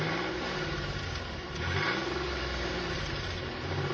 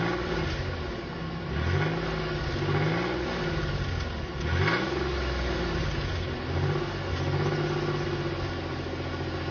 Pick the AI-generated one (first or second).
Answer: first